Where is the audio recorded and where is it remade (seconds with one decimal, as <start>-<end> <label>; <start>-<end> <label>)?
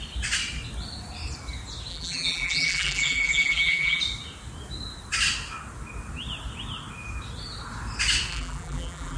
0.0-1.9 recorded; 1.9-4.0 remade; 4.0-8.3 recorded; 8.3-9.2 remade